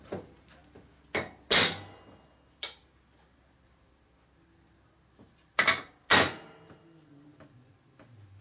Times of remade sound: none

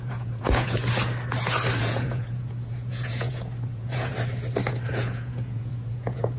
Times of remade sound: 0.0-0.8 (vocoder, Vocos); 1.8-4.1; 4.9-6.4